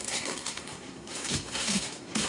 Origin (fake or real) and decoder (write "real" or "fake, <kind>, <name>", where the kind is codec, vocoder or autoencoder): fake, codec, SNAC